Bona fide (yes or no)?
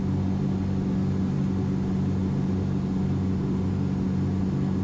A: yes